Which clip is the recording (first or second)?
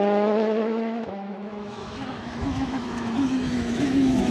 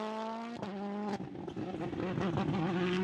second